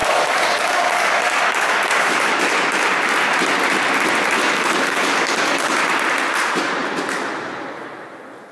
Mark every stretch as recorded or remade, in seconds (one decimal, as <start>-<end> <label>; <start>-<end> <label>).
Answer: 0.0-2.3 remade; 2.3-4.4 recorded; 4.4-5.8 remade; 5.8-8.5 recorded